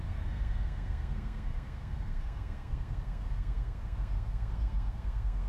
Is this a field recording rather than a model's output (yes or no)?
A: no